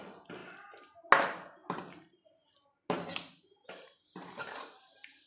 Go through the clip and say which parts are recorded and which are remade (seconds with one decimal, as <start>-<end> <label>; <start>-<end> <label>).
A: 0.0-5.3 recorded